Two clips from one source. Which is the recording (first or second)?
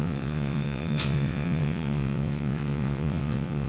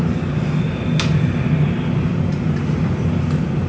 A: second